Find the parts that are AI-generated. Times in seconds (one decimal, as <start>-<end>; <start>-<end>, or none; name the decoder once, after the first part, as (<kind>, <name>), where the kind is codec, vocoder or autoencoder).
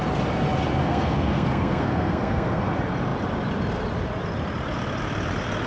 0.8-2.6 (codec, SNAC)